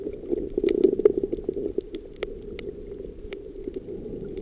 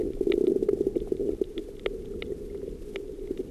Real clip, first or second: second